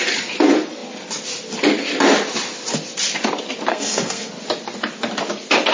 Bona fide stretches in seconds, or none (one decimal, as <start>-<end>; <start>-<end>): 0.0-3.7; 4.3-5.7